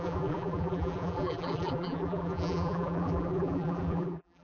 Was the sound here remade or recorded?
remade